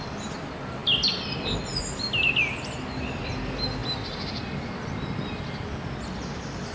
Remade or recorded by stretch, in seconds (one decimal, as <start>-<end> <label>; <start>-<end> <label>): 0.0-6.7 recorded